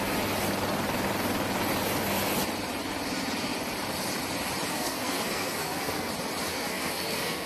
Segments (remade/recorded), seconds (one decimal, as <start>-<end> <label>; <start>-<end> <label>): 0.0-4.7 recorded; 4.7-6.1 remade; 6.1-6.5 recorded; 6.5-7.5 remade